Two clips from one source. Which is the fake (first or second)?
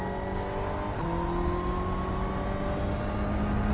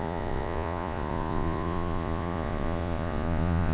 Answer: second